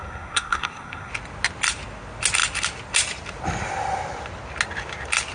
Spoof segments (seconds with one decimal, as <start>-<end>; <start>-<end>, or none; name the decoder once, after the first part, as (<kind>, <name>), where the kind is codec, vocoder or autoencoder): 0.0-1.1 (codec, SNAC)